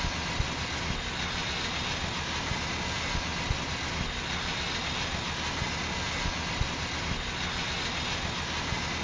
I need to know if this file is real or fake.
real